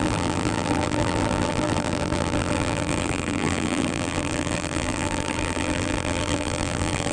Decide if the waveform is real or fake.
fake